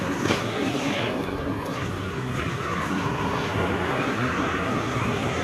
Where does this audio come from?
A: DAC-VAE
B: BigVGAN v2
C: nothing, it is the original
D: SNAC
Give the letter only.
D